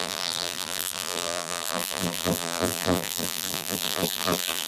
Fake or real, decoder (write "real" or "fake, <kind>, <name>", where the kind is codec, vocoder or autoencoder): fake, vocoder, BigVGAN v2